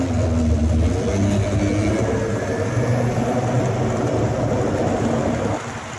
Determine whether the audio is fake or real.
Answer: real